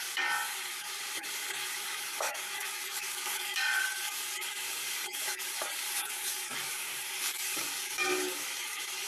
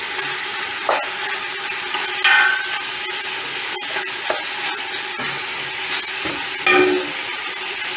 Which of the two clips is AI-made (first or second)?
first